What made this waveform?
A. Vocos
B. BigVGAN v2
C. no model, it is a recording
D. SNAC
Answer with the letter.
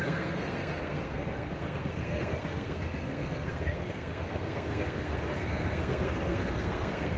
D